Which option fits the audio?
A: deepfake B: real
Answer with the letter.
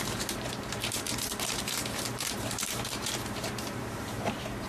A